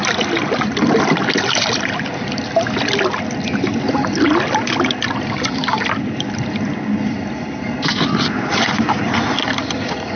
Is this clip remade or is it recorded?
recorded